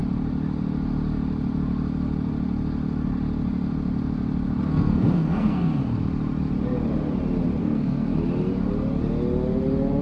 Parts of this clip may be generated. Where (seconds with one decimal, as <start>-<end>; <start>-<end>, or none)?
4.6-5.8; 7.6-8.1